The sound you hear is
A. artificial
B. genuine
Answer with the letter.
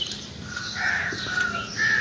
B